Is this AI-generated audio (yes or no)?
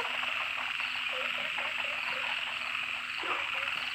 no